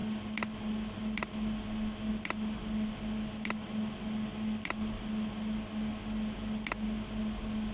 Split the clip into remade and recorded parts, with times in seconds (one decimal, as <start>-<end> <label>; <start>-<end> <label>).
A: 0.0-7.7 recorded